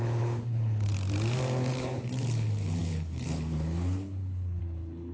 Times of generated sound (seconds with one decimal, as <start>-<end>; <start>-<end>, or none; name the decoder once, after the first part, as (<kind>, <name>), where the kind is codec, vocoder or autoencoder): 0.0-0.9 (codec, HILCodec); 1.7-5.1